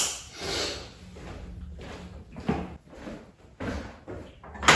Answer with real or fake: real